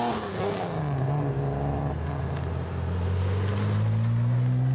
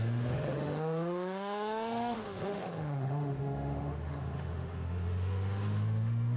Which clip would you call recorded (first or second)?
first